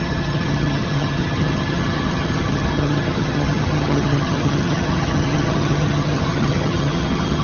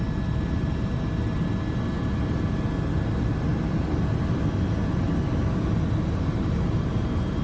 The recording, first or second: second